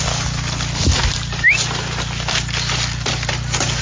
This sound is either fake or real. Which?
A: real